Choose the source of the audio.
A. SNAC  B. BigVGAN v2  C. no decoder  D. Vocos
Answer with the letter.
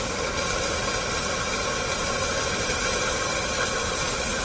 C